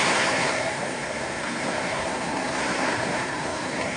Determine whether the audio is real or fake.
fake